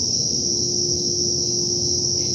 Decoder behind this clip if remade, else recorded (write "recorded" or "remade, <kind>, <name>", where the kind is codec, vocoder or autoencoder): recorded